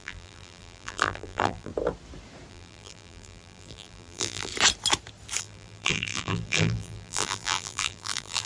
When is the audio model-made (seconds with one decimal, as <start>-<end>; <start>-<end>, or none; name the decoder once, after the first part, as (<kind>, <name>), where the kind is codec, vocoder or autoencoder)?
0.0-1.7 (vocoder, BigVGAN v2); 2.5-4.5; 5.4-8.5